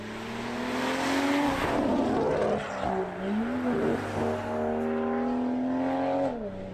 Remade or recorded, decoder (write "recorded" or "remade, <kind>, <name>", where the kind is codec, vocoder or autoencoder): recorded